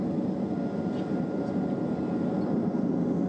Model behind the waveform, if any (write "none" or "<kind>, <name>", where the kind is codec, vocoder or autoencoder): none